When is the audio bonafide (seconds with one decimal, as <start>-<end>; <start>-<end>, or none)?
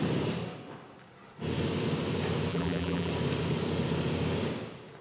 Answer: 0.0-2.5; 3.1-5.0